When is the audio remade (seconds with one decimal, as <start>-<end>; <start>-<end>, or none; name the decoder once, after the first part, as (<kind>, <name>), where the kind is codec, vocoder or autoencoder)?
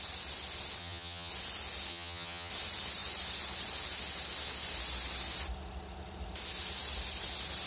0.8-1.3 (vocoder, HiFi-GAN); 1.9-2.5